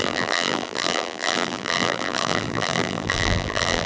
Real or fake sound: fake